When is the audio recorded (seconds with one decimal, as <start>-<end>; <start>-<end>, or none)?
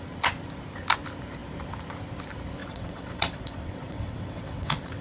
0.0-2.6